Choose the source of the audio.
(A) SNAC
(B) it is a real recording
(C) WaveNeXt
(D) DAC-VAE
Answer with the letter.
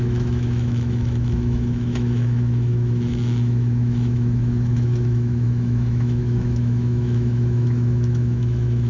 D